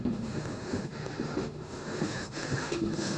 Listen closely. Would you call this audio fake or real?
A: fake